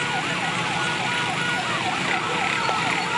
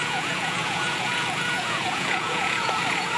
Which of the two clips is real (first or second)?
first